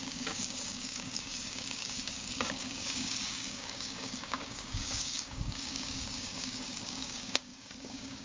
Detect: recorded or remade remade